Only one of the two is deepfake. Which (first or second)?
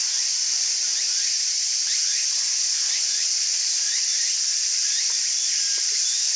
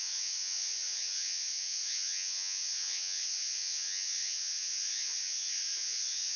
second